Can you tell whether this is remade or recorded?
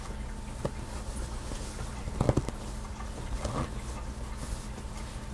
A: recorded